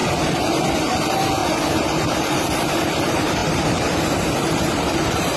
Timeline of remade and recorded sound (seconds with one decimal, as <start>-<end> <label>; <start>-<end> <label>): 0.0-3.4 recorded; 3.4-4.0 remade; 4.0-5.4 recorded